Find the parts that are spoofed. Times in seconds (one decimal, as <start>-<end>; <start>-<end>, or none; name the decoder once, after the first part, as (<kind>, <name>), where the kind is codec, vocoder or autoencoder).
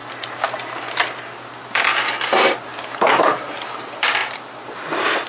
0.0-3.2 (vocoder, BigVGAN v2); 4.2-5.3